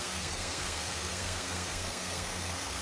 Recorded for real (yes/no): no